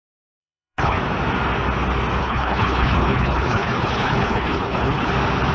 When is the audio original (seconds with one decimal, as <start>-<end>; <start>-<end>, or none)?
0.0-0.4; 1.0-2.2; 5.1-5.5